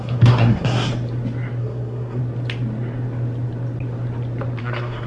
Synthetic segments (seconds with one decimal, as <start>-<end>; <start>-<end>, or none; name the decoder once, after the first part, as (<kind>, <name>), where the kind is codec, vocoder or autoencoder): 0.0-0.9 (codec, SNAC); 1.6-2.2; 4.6-5.1